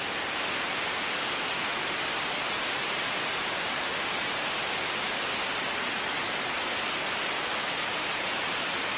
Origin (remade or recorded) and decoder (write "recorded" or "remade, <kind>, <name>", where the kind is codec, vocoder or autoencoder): recorded